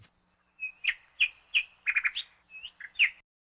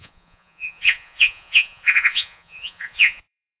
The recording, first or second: first